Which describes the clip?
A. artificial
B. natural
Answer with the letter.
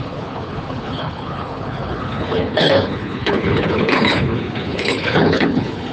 A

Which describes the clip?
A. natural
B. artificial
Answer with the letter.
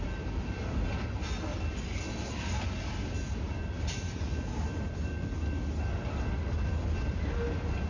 A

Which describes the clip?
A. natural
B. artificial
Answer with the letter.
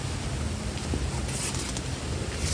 A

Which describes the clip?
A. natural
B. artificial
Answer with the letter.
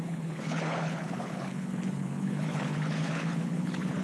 B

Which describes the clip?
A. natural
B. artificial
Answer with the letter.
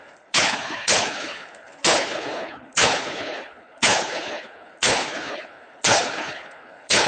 B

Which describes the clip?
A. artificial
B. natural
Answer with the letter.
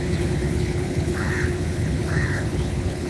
A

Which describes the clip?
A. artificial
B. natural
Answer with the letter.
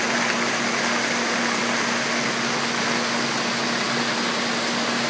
B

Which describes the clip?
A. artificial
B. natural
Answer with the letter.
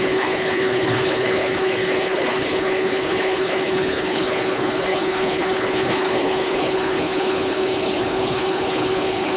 A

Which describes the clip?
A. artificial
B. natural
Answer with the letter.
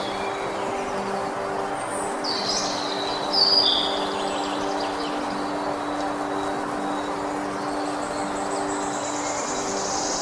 B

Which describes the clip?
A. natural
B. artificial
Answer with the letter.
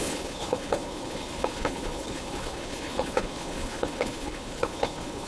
B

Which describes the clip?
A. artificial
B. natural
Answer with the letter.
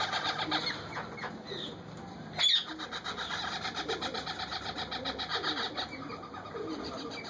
B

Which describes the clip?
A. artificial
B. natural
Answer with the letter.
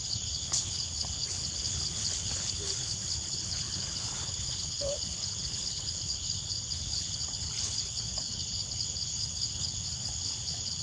A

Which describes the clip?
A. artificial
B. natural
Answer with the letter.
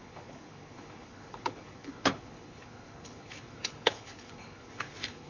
A